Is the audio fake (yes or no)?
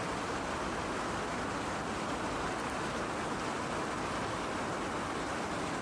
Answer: no